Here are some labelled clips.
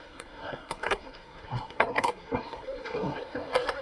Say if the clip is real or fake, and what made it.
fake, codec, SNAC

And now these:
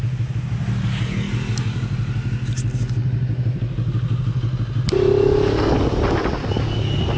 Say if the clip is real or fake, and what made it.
real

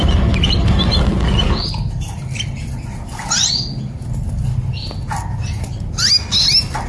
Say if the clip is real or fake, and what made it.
real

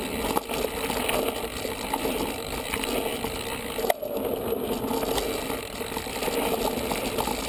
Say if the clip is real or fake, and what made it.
real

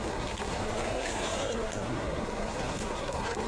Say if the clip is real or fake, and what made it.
fake, codec, SNAC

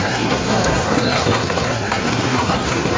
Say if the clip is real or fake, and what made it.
fake, codec, SNAC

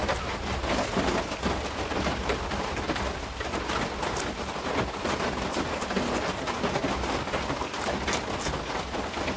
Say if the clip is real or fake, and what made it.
real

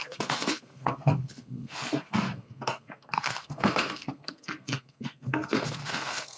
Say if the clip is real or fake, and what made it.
fake, codec, SNAC